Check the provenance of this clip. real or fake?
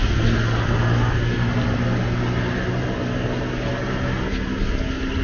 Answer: real